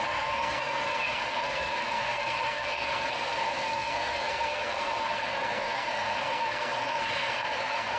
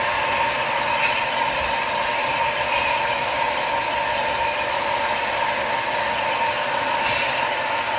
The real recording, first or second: second